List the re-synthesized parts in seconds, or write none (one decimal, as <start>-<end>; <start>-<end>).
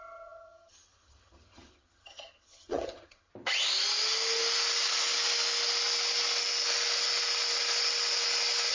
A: 0.0-3.3